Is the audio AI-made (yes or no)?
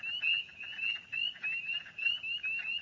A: no